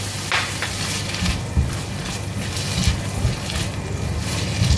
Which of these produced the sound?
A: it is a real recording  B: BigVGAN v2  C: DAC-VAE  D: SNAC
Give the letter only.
A